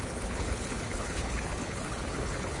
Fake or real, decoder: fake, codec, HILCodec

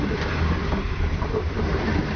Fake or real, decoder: real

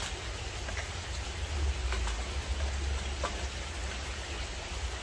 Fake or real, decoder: real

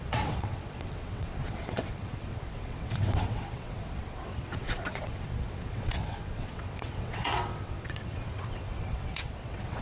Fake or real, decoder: fake, vocoder, WaveNeXt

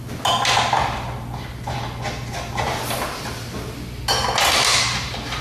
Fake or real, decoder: real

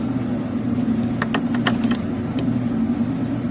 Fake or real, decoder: real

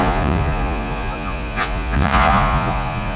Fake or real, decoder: fake, vocoder, Vocos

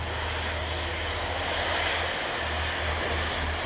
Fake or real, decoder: real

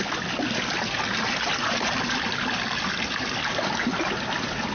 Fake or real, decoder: real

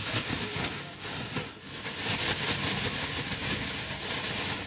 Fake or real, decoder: real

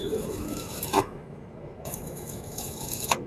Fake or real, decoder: fake, autoencoder, DAC-VAE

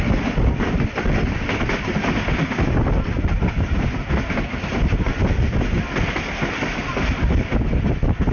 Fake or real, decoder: real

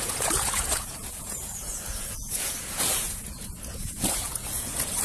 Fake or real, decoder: fake, vocoder, Vocos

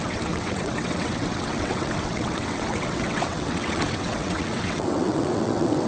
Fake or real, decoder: fake, vocoder, WaveNeXt